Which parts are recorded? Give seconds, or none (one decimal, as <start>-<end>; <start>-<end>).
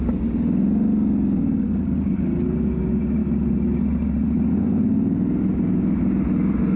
0.0-6.8